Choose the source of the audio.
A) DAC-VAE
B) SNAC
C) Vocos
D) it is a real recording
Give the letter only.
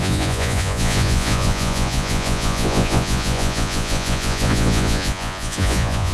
C